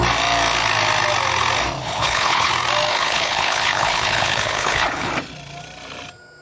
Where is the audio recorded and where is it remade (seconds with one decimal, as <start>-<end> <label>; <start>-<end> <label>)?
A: 0.0-1.8 recorded; 1.8-2.5 remade; 2.5-2.9 recorded; 2.9-5.1 remade; 5.1-6.4 recorded